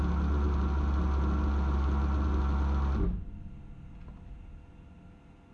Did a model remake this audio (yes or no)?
no